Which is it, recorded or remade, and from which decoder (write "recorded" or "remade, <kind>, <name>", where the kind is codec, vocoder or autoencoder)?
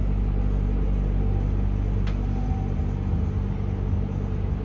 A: recorded